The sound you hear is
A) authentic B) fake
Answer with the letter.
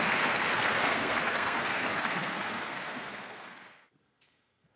B